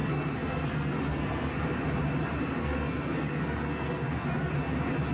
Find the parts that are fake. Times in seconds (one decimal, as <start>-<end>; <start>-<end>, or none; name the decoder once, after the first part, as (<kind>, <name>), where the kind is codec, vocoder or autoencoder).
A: 0.0-1.6 (codec, SNAC); 2.6-4.5